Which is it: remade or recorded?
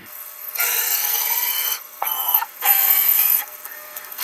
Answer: remade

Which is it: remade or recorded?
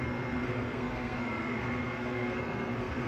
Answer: remade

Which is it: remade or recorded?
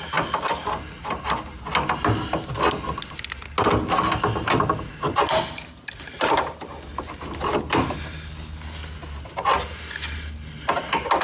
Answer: recorded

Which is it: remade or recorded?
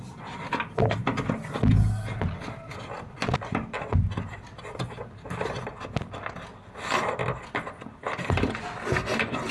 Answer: recorded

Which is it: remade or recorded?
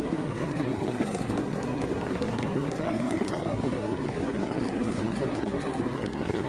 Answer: remade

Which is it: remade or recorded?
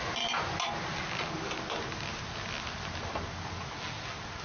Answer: recorded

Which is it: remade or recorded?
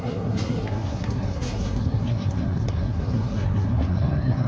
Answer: remade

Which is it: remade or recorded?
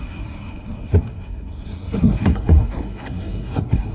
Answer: remade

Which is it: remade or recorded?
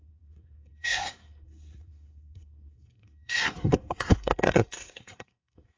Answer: remade